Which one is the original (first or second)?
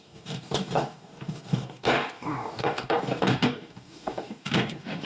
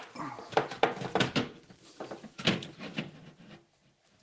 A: second